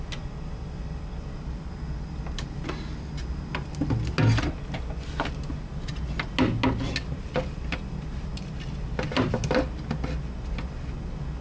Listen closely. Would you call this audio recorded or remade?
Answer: recorded